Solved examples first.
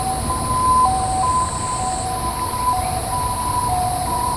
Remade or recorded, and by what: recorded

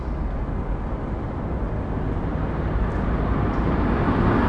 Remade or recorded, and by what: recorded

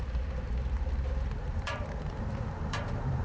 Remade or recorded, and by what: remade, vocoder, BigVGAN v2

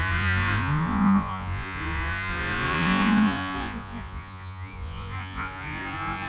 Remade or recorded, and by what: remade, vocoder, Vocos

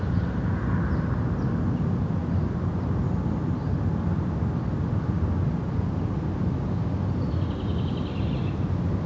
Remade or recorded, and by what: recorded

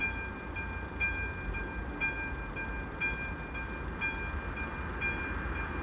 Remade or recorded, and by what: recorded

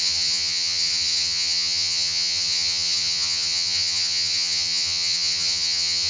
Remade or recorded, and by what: remade, vocoder, HiFi-GAN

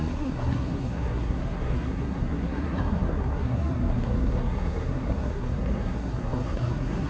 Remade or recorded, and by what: remade, codec, SNAC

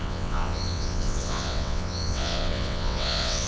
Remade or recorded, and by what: remade, vocoder, WaveNeXt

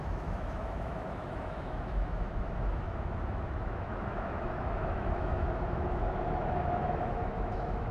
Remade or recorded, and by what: remade, autoencoder, DAC-VAE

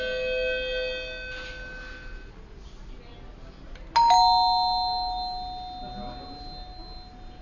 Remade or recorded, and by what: recorded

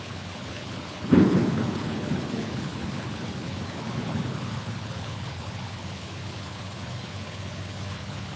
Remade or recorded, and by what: remade, codec, HILCodec